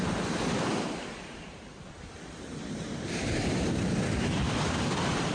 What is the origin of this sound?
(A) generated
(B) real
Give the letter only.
A